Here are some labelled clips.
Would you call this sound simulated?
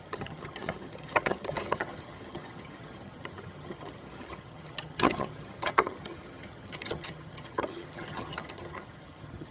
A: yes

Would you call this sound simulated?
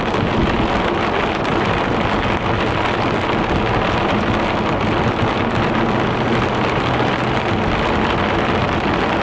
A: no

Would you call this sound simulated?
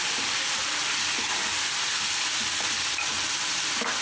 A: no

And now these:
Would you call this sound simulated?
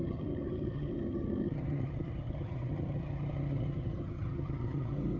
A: yes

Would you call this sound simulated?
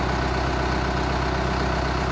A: no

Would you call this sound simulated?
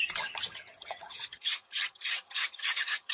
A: yes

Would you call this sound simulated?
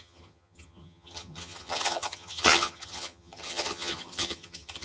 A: yes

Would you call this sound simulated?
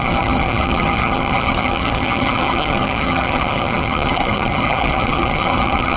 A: yes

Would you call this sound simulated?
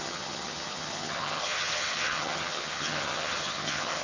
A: yes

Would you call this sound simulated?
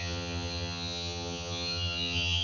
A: yes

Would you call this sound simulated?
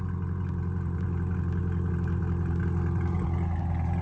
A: no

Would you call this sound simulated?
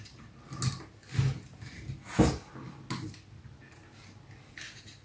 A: no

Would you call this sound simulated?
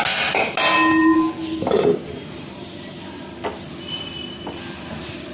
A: no